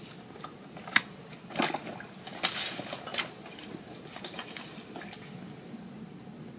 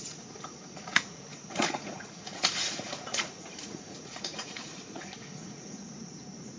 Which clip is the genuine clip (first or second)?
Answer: first